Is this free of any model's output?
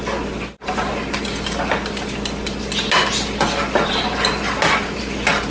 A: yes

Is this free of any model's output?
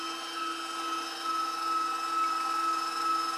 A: yes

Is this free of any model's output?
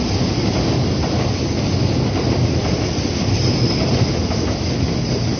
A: yes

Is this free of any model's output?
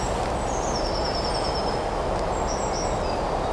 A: yes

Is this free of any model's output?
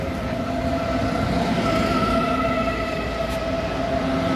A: yes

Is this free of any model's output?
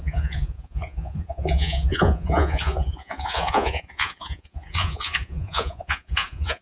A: no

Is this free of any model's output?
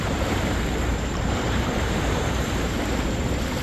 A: no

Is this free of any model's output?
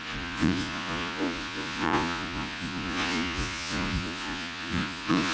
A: no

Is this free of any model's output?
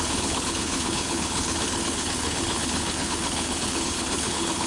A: no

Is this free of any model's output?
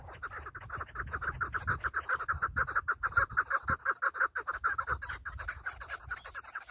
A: yes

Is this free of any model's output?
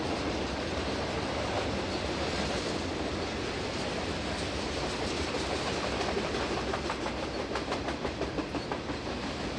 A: yes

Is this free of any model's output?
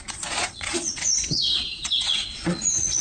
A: no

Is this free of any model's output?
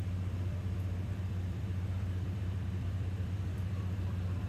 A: no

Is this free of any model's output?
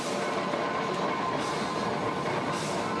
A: yes